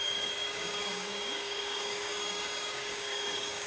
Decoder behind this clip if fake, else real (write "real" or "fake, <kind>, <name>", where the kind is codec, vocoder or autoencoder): fake, codec, DAC